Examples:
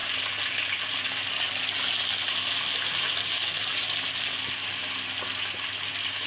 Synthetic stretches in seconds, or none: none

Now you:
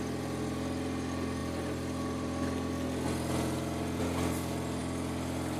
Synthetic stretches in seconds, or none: none

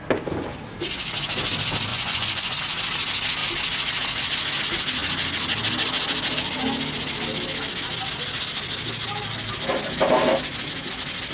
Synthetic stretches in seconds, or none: 1.9-2.6 (vocoder, Vocos)

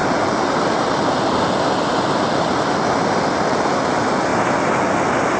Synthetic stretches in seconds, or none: none

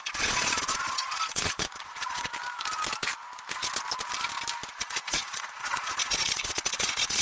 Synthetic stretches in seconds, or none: 0.0-2.3 (vocoder, Vocos); 4.7-7.2